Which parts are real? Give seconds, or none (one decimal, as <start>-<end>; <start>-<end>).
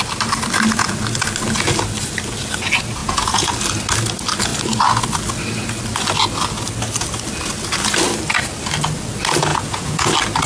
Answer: 0.0-3.0; 3.5-9.5; 10.1-10.5